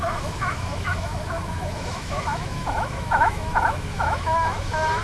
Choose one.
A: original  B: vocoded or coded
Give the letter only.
B